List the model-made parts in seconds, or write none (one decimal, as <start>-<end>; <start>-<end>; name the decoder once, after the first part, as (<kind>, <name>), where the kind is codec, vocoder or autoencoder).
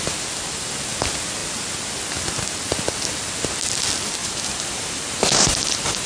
4.2-6.1 (vocoder, BigVGAN v2)